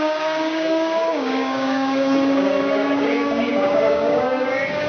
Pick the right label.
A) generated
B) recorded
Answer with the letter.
A